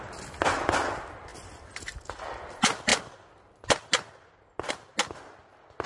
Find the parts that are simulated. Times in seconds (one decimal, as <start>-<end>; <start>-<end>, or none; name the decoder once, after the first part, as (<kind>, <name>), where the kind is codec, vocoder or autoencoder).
none